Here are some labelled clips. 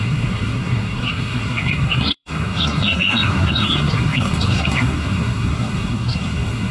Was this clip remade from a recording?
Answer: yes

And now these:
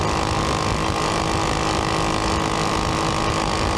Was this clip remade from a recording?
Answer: no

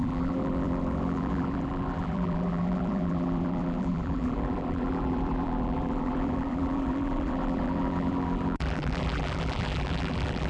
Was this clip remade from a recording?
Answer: yes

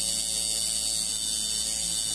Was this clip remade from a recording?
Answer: no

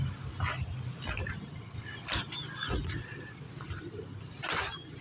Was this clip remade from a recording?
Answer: no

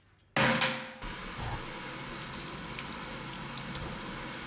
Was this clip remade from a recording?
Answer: no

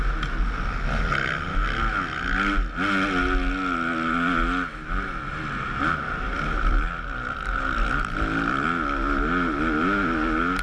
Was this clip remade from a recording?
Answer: no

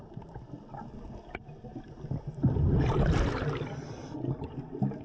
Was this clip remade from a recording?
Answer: no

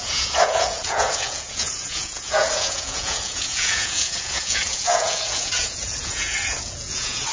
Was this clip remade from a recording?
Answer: yes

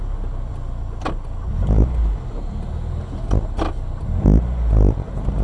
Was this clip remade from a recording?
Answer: no